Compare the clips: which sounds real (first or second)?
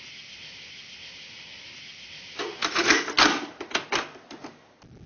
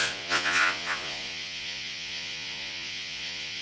first